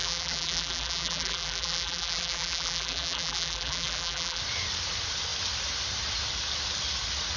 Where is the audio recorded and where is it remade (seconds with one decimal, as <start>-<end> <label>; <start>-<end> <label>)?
0.0-4.4 remade; 4.4-7.4 recorded